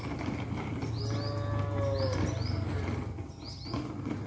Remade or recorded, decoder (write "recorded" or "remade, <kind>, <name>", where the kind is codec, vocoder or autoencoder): recorded